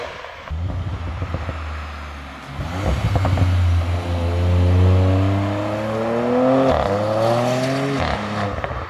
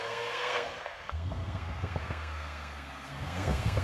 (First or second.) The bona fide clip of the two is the first